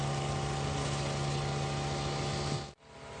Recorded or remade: recorded